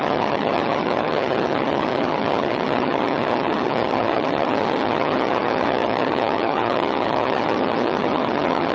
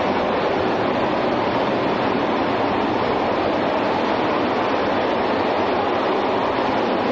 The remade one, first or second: first